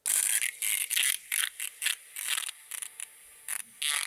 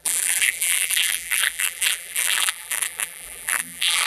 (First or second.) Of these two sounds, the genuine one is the first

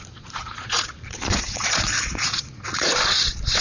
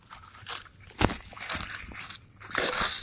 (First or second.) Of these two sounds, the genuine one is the second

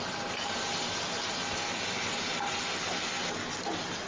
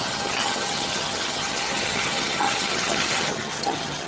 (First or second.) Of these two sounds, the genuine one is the first